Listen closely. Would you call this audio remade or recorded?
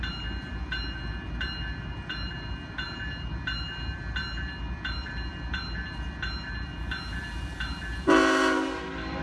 recorded